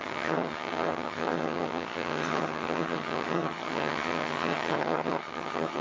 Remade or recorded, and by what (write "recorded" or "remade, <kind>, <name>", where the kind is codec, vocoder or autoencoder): remade, vocoder, HiFi-GAN